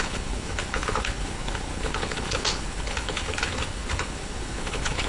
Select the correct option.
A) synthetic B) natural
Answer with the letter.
A